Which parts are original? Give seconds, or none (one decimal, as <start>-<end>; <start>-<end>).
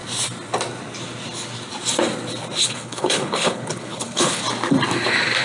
0.0-2.6; 4.4-5.4